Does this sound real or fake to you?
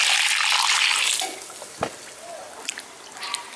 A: real